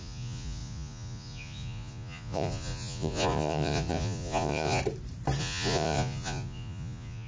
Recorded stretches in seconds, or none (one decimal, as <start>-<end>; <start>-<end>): 4.8-5.4